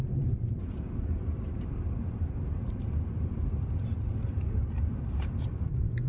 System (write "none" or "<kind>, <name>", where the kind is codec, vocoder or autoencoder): vocoder, BigVGAN v2